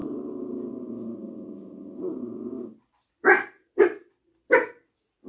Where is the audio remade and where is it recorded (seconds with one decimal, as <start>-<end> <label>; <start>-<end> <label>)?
0.0-5.3 recorded